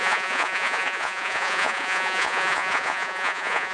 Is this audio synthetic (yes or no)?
yes